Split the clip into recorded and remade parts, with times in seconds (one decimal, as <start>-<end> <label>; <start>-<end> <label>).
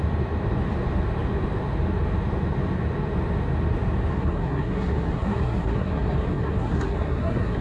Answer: 0.0-4.1 recorded; 4.1-7.6 remade